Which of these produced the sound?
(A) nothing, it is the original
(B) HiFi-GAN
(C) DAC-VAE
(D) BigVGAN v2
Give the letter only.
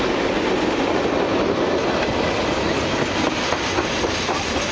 A